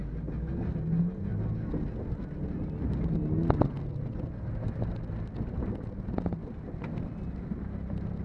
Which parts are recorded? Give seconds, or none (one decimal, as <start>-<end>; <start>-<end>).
0.0-8.2